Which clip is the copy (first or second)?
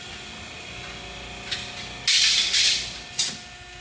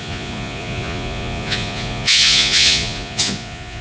second